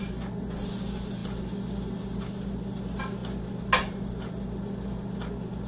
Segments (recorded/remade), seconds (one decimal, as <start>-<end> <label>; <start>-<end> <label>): 0.0-5.7 recorded